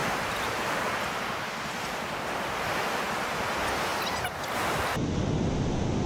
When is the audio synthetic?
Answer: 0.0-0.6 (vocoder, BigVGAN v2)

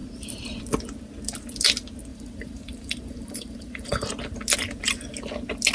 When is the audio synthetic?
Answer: 0.0-0.6 (vocoder, BigVGAN v2); 2.1-4.1

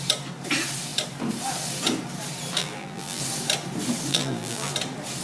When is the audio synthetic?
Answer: 2.6-3.2 (vocoder, BigVGAN v2); 4.1-4.7

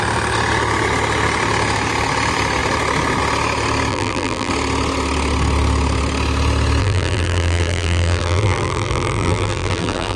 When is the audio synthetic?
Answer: 3.9-4.5 (vocoder, BigVGAN v2); 6.8-10.2

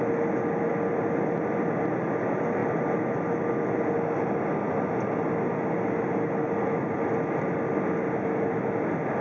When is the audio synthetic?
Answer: none

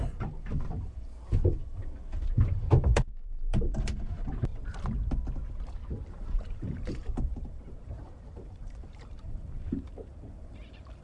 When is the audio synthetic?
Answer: 0.0-4.5 (vocoder, BigVGAN v2); 6.1-11.0